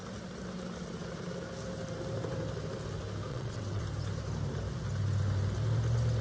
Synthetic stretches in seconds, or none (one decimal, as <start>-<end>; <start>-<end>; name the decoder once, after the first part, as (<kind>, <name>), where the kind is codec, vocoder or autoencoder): 3.3-3.8 (vocoder, WaveNeXt)